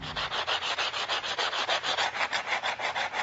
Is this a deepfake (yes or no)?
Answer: no